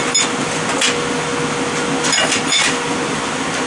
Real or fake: real